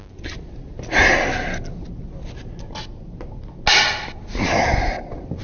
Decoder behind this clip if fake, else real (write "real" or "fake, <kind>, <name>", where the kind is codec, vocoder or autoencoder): real